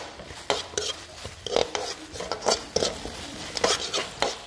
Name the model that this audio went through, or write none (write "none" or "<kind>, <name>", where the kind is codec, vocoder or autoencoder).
none